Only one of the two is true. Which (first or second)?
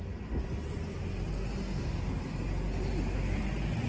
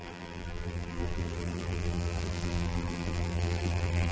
first